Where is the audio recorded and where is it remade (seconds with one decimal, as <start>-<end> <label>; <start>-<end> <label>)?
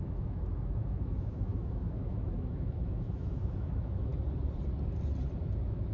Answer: 0.0-4.1 remade; 4.1-5.4 recorded; 5.4-5.9 remade